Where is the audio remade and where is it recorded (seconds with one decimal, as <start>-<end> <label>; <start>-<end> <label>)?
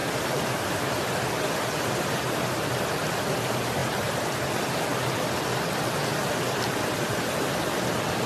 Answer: 0.0-1.0 remade; 1.0-8.3 recorded